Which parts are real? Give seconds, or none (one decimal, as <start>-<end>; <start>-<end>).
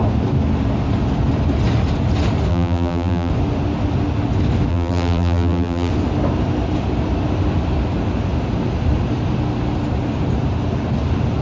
0.0-2.5; 3.3-4.7; 5.9-11.4